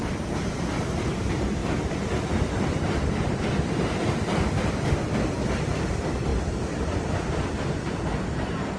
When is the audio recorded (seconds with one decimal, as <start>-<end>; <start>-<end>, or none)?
1.6-2.4; 6.3-7.3